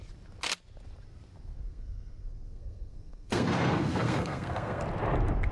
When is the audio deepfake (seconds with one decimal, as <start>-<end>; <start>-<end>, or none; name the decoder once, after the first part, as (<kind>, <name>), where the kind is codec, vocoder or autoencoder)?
1.5-4.8 (codec, SNAC)